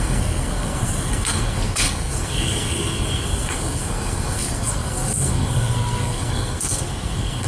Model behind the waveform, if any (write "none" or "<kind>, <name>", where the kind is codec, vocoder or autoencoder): codec, SNAC